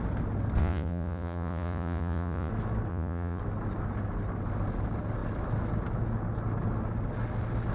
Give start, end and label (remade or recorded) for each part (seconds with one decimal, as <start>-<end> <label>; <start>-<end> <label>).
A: 0.0-0.6 recorded; 0.6-2.5 remade; 2.5-2.9 recorded; 2.9-3.4 remade; 3.4-7.7 recorded